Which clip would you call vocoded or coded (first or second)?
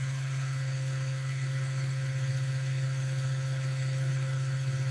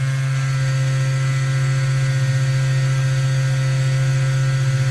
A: first